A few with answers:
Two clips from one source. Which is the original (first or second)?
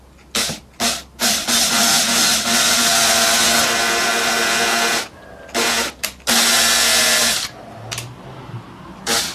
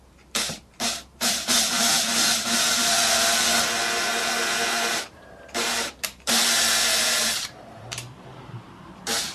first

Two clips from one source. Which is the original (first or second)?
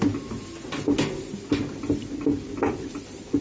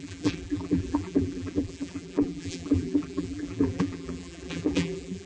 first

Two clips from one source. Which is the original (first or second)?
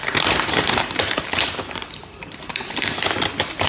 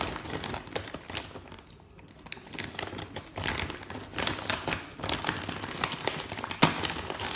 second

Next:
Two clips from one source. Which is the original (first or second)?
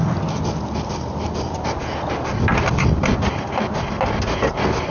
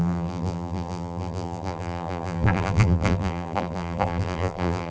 first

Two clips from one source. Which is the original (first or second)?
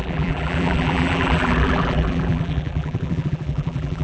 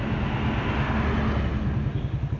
second